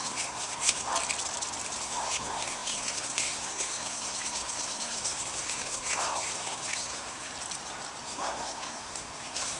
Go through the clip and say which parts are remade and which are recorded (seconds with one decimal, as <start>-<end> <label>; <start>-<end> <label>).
0.0-0.9 remade; 0.9-1.8 recorded; 1.8-7.3 remade; 7.3-8.0 recorded; 8.0-9.6 remade